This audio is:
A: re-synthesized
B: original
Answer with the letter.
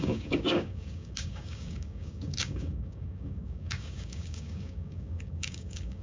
A